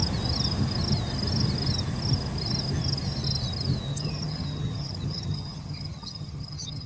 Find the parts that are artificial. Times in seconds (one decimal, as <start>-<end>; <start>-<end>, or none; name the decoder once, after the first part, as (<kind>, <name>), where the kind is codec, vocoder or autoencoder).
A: 3.9-6.9 (vocoder, HiFi-GAN)